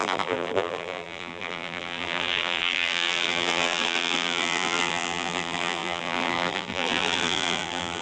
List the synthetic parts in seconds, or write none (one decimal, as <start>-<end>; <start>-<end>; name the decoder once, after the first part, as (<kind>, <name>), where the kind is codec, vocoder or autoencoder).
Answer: 0.0-8.0 (vocoder, BigVGAN v2)